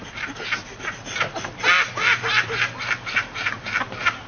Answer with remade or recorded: recorded